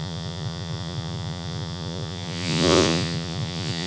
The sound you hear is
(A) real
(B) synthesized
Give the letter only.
B